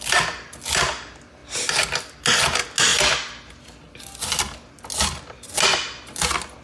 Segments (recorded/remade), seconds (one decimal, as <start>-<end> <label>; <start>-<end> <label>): 0.0-6.6 recorded